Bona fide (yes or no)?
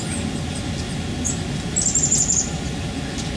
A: yes